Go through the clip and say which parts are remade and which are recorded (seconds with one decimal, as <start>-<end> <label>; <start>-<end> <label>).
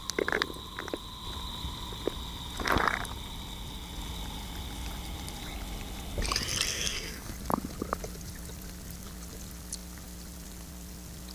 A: 0.0-6.7 recorded; 6.7-7.3 remade; 7.3-11.3 recorded